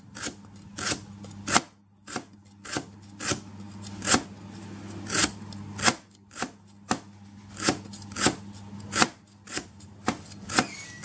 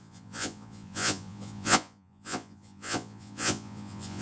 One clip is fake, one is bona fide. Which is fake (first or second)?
second